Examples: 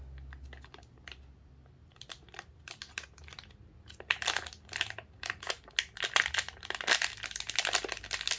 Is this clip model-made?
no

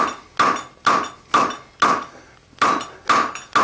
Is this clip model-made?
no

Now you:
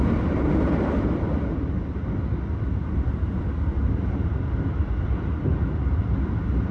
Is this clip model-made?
no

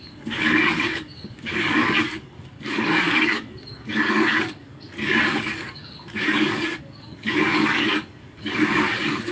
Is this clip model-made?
yes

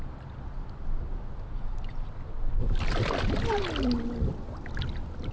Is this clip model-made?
no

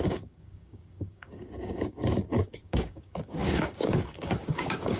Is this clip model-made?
yes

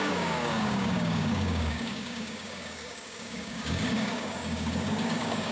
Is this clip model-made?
yes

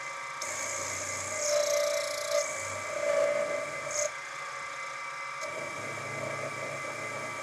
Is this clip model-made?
no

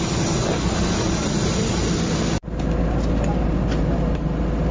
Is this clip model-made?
no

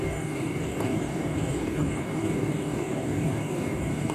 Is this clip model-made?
yes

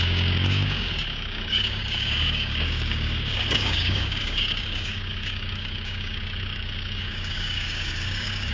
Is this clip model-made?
yes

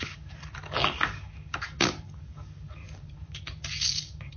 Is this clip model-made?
yes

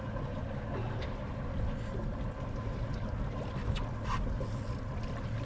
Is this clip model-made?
no